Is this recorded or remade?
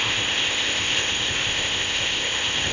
remade